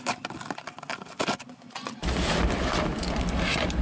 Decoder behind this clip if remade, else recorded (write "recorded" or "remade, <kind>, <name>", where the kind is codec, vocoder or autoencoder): recorded